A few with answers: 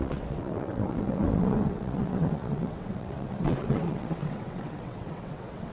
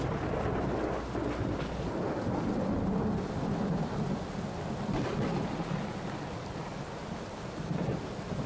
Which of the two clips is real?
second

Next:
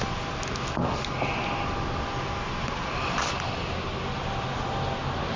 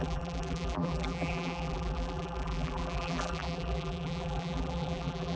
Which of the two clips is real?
first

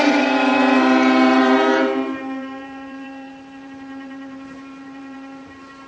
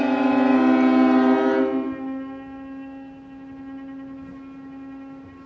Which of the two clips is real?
second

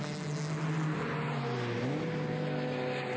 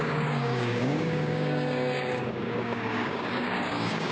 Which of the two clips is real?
first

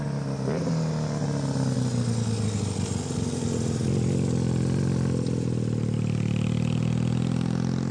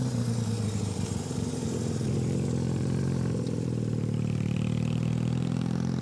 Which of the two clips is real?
first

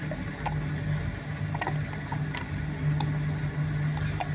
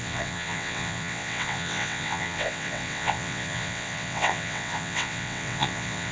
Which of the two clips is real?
first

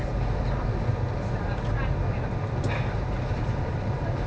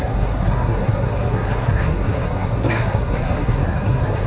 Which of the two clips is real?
first